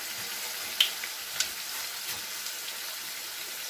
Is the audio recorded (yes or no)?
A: yes